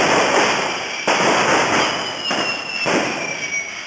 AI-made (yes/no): no